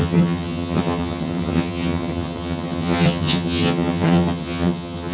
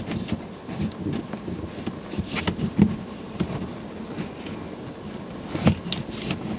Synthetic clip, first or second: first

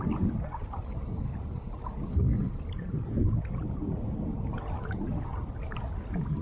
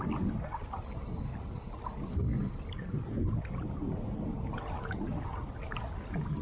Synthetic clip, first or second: first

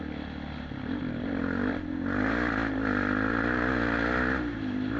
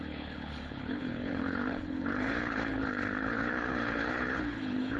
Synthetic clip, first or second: second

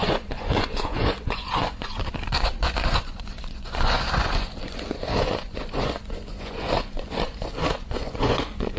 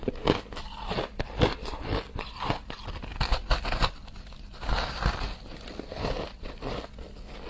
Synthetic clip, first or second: first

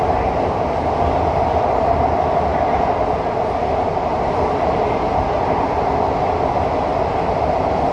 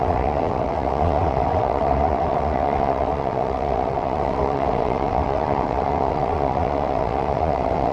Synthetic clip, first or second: second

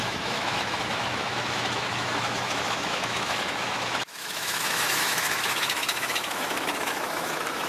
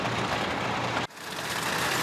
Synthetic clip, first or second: first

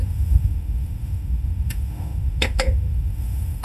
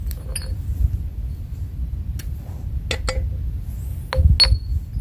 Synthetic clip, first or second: first